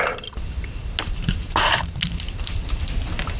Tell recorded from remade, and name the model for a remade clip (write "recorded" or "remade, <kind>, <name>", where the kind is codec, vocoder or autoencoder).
recorded